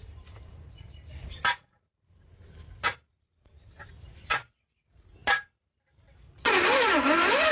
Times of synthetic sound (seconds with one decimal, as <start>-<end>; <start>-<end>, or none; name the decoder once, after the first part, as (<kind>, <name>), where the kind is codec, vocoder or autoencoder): 0.0-4.5 (vocoder, BigVGAN v2); 5.2-7.5